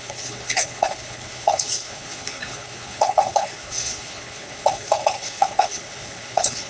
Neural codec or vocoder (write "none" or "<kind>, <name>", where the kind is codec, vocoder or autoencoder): codec, HILCodec